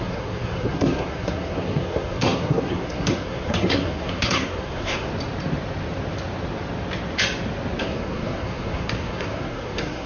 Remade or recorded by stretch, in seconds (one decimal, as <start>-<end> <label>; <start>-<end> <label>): 0.0-5.1 remade; 5.1-7.8 recorded; 7.8-10.1 remade